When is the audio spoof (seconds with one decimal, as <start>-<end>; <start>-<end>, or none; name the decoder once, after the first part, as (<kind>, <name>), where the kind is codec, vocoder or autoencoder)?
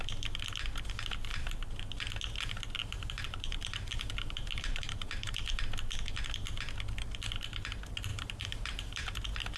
1.3-1.8 (vocoder, BigVGAN v2); 2.8-5.6; 8.1-8.8